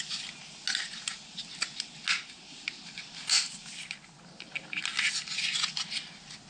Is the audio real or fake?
real